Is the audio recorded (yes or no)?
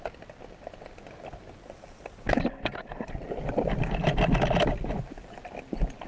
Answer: yes